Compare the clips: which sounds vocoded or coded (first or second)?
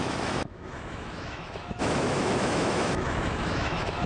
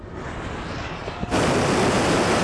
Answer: first